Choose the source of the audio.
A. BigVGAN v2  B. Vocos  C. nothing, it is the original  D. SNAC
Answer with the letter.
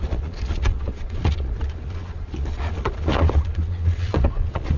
B